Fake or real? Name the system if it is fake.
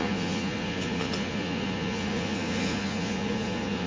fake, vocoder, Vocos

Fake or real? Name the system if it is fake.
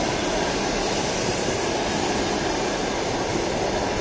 real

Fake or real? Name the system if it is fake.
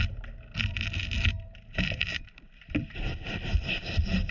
real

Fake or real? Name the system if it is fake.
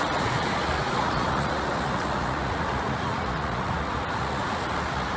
fake, vocoder, Vocos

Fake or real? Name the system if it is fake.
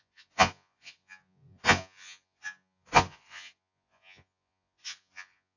fake, vocoder, Vocos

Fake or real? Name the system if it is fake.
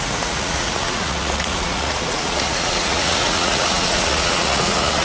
fake, vocoder, Vocos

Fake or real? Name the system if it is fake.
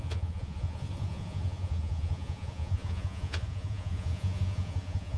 fake, vocoder, Vocos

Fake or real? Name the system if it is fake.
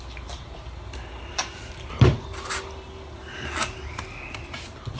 real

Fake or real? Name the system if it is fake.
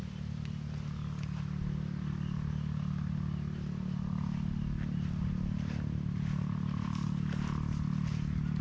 real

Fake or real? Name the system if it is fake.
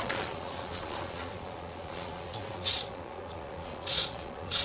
fake, vocoder, Vocos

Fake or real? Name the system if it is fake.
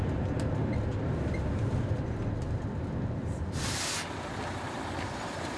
real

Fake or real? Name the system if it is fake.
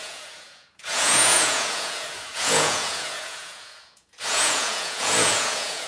fake, vocoder, Vocos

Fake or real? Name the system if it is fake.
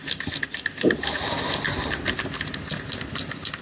real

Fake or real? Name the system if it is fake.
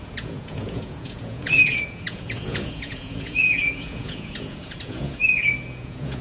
fake, vocoder, Vocos